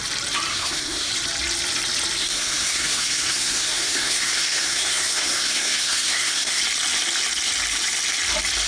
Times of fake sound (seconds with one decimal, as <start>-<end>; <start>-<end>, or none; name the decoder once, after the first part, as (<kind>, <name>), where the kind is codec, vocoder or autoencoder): 0.5-1.1 (codec, SNAC); 2.2-6.6

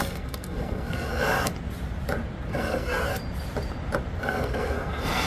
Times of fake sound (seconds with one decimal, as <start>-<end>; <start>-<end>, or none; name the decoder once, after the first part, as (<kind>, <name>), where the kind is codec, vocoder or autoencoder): 0.0-1.5 (codec, SNAC); 2.5-3.1; 4.2-5.3